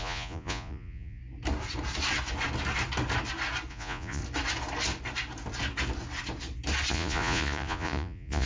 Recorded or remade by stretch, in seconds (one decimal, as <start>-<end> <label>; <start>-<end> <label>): 0.0-1.2 remade; 1.2-3.7 recorded; 3.7-4.2 remade; 4.2-6.9 recorded; 6.9-8.5 remade